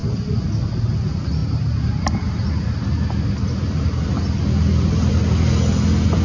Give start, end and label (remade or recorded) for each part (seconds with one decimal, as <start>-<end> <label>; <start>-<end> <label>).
0.0-6.2 recorded

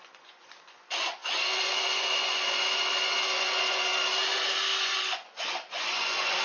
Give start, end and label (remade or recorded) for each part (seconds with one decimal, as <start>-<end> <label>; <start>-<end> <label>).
0.0-3.9 remade; 3.9-4.8 recorded; 4.8-6.4 remade

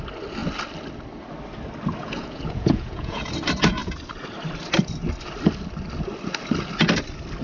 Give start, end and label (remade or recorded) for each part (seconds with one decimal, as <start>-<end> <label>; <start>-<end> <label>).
0.0-2.0 recorded; 2.0-3.3 remade; 3.3-7.4 recorded

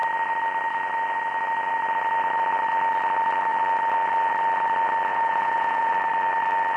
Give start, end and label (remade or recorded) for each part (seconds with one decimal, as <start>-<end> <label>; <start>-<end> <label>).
0.0-5.1 recorded; 5.1-5.9 remade; 5.9-6.8 recorded

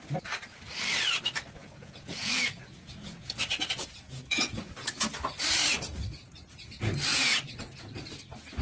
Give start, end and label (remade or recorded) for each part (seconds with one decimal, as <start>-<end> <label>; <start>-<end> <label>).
0.0-1.6 recorded; 1.6-4.9 remade; 4.9-7.1 recorded; 7.1-8.0 remade; 8.0-8.6 recorded

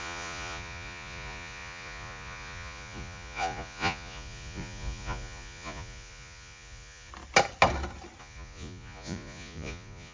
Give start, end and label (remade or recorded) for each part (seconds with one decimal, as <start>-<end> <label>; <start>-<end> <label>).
0.0-7.1 remade; 7.1-8.2 recorded; 8.2-10.1 remade